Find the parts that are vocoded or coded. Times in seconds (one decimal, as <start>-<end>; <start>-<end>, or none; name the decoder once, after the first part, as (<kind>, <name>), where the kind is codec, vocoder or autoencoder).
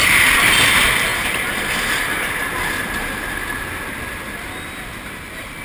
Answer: none